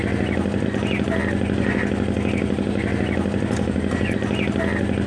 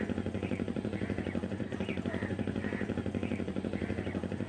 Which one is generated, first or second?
second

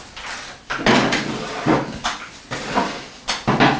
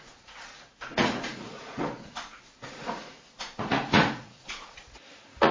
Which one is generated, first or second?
second